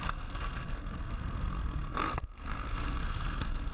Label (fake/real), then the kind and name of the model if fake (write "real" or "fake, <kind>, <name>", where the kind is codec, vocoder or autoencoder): fake, codec, SNAC